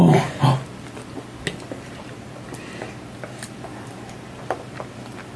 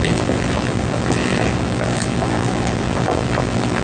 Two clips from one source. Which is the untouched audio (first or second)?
first